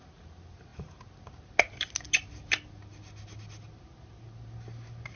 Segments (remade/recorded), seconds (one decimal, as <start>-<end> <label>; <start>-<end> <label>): 0.0-5.2 recorded